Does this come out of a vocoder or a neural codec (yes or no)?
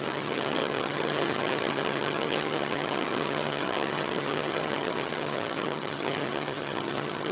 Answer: yes